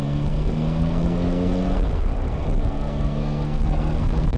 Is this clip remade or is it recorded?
remade